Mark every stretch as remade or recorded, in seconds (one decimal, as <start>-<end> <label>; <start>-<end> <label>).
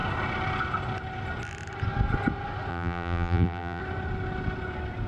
0.0-2.7 recorded; 2.7-3.8 remade; 3.8-5.1 recorded